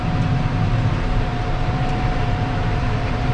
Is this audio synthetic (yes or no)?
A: yes